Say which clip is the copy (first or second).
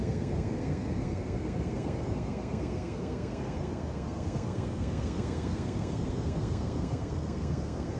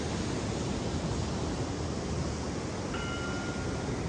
first